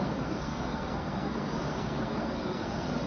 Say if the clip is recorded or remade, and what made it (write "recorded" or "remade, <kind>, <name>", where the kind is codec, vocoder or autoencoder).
remade, codec, SNAC